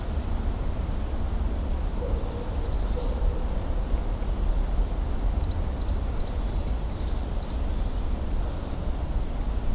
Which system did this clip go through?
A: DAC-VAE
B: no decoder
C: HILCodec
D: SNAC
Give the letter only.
B